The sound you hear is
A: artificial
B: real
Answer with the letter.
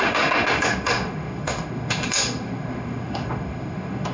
A